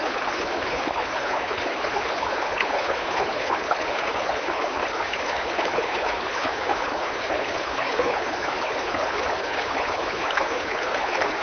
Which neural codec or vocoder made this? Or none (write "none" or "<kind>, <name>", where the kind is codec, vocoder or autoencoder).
codec, HILCodec